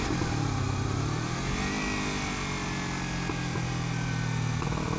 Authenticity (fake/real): real